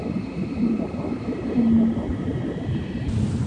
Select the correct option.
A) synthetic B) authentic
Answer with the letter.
B